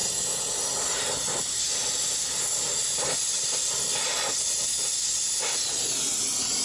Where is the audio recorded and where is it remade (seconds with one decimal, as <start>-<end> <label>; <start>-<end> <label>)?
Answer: 0.0-6.6 recorded